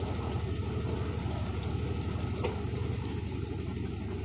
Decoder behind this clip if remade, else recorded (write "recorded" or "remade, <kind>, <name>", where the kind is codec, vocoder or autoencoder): recorded